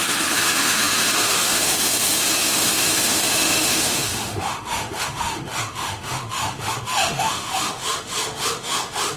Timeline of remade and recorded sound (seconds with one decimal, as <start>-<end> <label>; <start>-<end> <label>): 0.0-9.2 remade